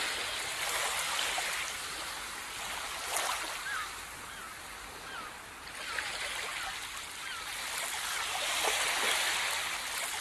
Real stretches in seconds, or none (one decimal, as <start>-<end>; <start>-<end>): 0.0-10.2